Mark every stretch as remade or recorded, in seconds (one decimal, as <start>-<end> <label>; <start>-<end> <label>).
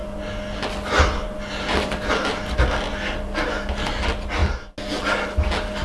0.0-5.8 recorded